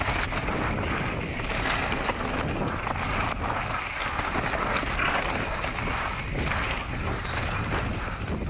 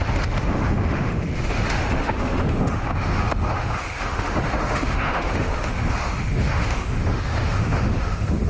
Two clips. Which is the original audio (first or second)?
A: first